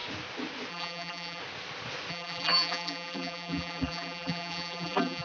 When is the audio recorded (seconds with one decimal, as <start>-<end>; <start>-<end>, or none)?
0.0-0.7; 1.4-2.1